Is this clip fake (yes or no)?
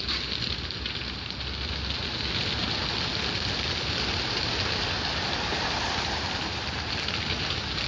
no